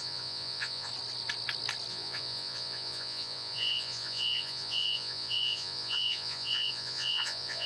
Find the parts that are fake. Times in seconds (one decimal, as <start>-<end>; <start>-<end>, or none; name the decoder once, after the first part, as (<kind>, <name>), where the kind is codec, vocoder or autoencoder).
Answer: 0.0-0.9 (vocoder, Vocos); 1.9-7.7